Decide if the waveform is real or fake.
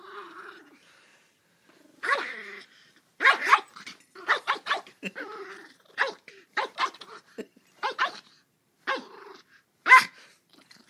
fake